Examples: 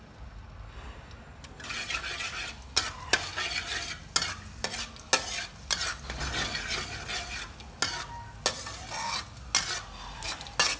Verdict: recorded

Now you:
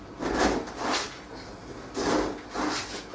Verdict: recorded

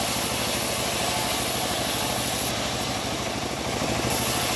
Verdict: recorded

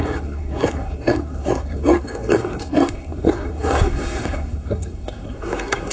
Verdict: remade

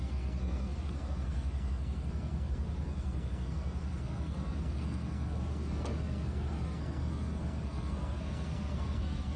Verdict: remade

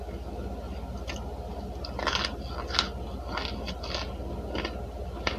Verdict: recorded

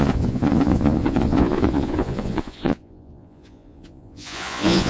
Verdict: remade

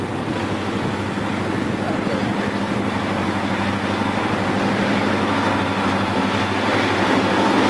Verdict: recorded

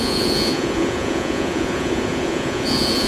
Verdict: remade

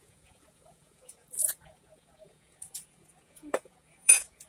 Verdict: remade